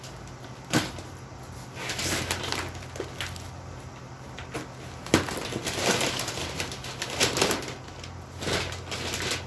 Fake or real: real